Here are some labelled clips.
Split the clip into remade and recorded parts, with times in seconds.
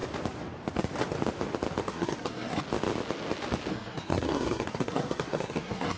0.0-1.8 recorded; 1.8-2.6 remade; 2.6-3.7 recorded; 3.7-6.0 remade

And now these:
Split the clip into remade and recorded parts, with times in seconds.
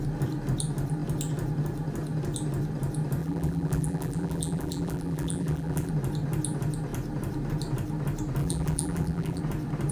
0.0-3.2 recorded; 3.2-5.9 remade; 5.9-8.4 recorded; 8.4-9.4 remade; 9.4-9.9 recorded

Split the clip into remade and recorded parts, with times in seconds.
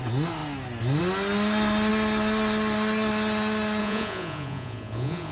0.0-3.8 recorded; 3.8-5.3 remade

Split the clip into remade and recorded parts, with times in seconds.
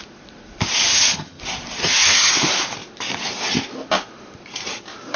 0.0-0.9 recorded; 0.9-1.4 remade; 1.4-1.8 recorded; 1.8-2.3 remade; 2.3-5.2 recorded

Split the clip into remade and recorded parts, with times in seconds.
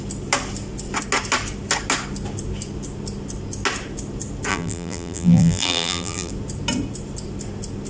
0.0-4.5 recorded; 4.5-6.3 remade; 6.3-7.9 recorded